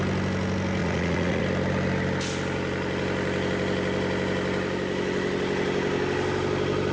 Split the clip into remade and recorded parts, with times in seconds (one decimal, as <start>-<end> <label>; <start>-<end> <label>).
0.0-0.8 recorded; 0.8-1.4 remade; 1.4-6.9 recorded